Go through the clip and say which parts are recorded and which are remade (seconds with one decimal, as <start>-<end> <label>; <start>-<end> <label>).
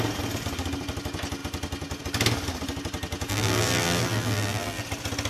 0.0-3.3 recorded; 3.3-4.8 remade; 4.8-5.3 recorded